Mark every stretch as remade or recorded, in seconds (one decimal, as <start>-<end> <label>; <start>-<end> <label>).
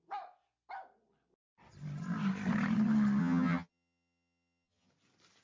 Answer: 0.0-3.2 recorded; 3.2-4.9 remade; 4.9-5.4 recorded